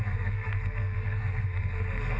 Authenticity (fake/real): fake